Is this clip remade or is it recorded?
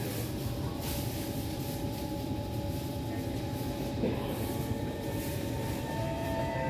remade